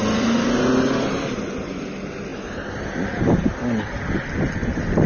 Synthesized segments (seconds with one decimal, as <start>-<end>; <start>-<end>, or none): none